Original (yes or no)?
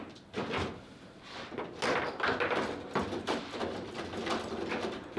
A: yes